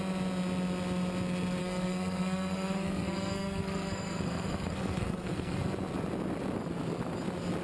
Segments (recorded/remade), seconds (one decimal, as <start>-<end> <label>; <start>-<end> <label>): 0.0-1.6 recorded; 1.6-5.6 remade; 5.6-7.6 recorded